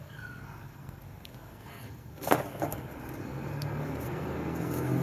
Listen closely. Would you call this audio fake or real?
fake